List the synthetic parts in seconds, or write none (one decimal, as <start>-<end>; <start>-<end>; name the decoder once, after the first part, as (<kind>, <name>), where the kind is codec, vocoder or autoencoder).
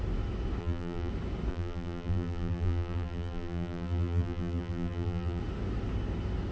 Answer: 0.6-1.1 (vocoder, BigVGAN v2); 1.5-5.4